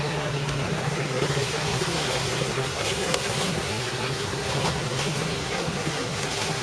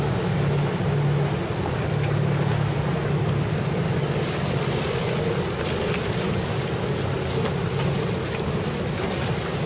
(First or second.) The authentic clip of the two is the second